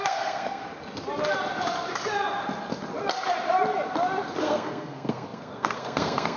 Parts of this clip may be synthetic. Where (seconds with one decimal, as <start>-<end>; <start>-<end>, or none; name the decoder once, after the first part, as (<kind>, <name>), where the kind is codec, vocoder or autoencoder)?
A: 0.0-0.6 (codec, SNAC); 4.4-6.4